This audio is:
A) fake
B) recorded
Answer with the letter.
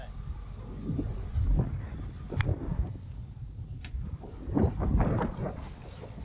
B